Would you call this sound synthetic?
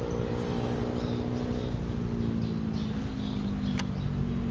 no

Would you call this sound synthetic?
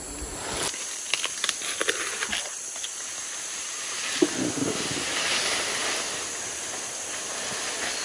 no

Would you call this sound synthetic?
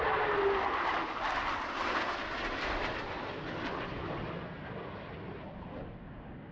no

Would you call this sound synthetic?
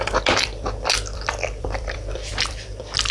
yes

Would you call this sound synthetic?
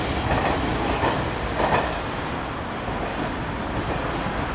no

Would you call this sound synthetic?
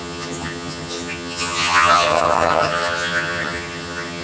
yes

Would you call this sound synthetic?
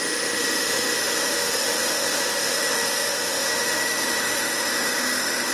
yes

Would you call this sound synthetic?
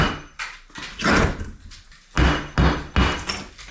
no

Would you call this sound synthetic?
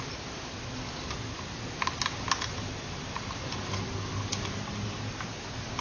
no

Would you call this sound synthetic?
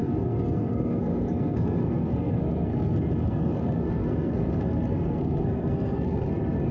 yes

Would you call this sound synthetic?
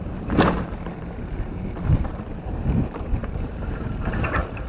yes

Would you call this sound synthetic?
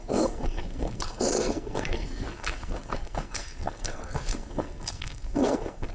yes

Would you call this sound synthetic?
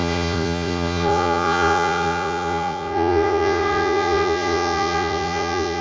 yes